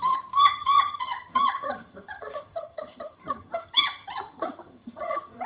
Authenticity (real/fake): fake